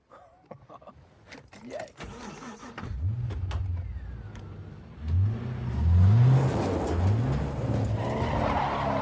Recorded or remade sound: recorded